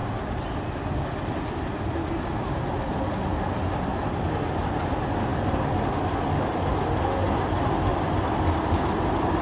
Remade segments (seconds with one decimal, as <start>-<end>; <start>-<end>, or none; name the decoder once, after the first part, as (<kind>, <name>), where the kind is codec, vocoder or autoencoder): 7.9-8.7 (vocoder, BigVGAN v2)